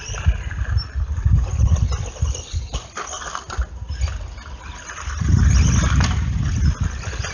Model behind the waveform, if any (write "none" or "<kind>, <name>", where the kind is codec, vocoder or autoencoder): none